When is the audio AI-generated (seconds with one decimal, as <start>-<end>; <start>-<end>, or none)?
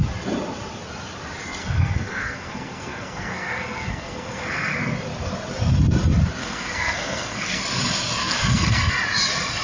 1.6-4.8; 6.4-7.6; 8.2-8.9